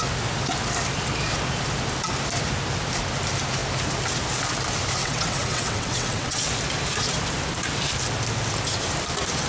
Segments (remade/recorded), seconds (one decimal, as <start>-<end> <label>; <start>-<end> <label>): 0.0-5.0 recorded; 5.0-6.5 remade; 6.5-9.5 recorded